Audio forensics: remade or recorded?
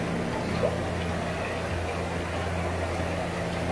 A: recorded